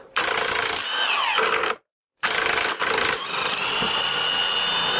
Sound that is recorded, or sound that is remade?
recorded